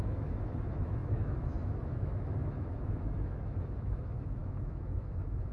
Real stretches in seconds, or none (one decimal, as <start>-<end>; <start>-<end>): none